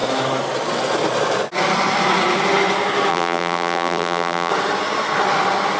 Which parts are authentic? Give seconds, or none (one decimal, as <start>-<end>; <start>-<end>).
0.0-3.1; 4.5-5.8